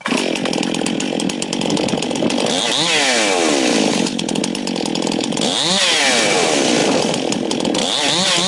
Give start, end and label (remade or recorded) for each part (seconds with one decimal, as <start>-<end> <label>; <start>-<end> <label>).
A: 0.0-3.9 recorded; 3.9-4.4 remade; 4.4-8.5 recorded